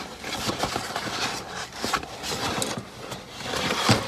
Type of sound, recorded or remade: recorded